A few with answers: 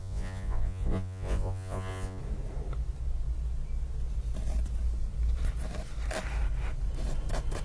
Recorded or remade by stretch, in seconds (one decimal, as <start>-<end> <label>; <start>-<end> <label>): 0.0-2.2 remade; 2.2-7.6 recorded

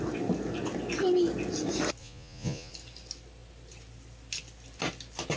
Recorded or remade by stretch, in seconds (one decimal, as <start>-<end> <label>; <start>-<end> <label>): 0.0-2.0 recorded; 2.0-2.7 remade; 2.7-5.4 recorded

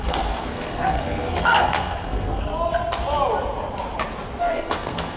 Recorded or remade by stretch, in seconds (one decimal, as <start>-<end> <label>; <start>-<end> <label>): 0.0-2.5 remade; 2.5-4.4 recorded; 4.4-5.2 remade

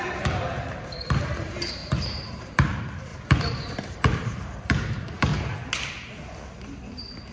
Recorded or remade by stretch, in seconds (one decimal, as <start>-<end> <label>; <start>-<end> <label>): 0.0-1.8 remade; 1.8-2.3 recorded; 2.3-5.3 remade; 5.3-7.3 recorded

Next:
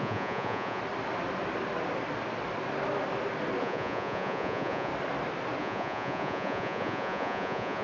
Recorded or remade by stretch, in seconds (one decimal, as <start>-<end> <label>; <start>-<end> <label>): 0.0-0.8 remade; 0.8-3.6 recorded; 3.6-4.9 remade; 4.9-5.6 recorded; 5.6-7.8 remade

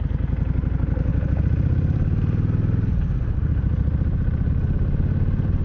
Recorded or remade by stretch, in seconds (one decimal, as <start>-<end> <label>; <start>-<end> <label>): 0.0-1.1 recorded; 1.1-4.5 remade; 4.5-5.6 recorded

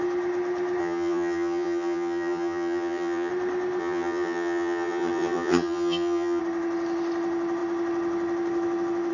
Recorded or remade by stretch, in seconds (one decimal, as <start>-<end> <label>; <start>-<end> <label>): 0.0-0.8 recorded; 0.8-3.3 remade; 3.3-3.8 recorded; 3.8-6.4 remade; 6.4-9.1 recorded